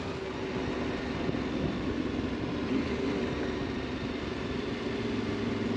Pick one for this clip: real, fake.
real